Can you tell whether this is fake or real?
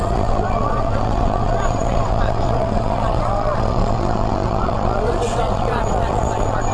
fake